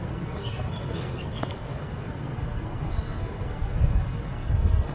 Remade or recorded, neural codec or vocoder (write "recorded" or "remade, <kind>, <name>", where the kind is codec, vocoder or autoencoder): remade, codec, SNAC